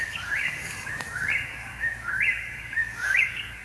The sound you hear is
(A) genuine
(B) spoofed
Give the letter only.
B